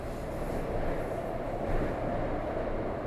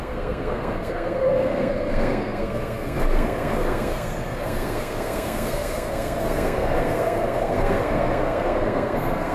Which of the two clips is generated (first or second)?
second